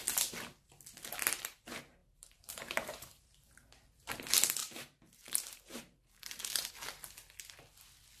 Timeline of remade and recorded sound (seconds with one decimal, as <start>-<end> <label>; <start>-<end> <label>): 0.0-2.0 recorded; 2.0-3.5 remade; 3.5-4.6 recorded; 4.6-6.7 remade; 6.7-8.2 recorded